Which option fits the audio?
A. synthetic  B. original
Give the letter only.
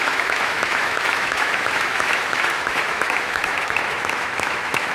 A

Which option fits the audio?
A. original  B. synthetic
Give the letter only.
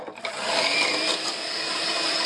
A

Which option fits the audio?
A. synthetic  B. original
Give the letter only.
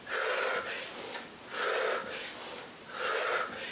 B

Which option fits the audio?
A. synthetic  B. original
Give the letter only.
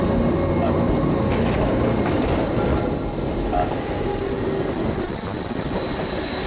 B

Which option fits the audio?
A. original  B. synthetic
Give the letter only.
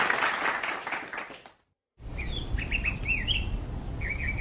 A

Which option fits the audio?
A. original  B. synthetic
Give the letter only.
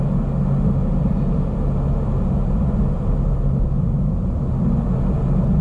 A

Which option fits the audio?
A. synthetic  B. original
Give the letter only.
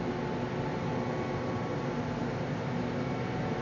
B